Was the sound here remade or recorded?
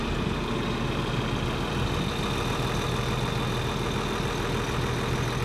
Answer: recorded